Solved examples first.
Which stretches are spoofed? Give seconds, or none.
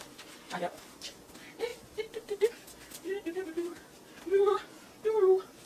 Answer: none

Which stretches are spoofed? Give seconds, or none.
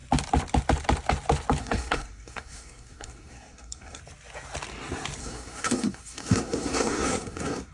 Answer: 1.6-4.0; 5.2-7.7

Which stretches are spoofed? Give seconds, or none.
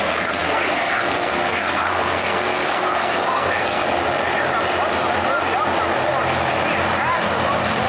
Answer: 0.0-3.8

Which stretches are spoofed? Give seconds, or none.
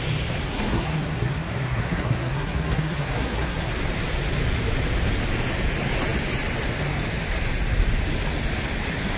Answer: 0.5-3.7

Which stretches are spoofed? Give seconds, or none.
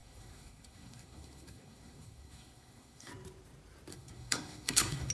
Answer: 0.0-3.1; 3.9-5.1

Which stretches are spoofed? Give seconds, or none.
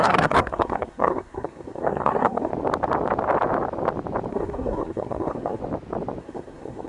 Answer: 0.0-2.5; 4.3-5.6; 6.2-6.9